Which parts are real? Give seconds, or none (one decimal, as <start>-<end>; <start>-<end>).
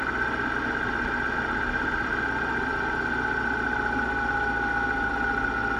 0.0-5.8